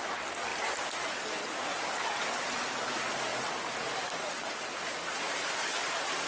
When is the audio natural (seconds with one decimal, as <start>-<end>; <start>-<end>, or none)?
0.5-1.5; 3.3-5.3